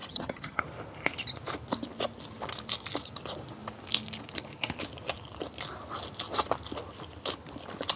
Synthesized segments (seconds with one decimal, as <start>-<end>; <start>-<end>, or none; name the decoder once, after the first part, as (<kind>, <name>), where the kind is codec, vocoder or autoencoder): 0.0-0.6 (vocoder, HiFi-GAN)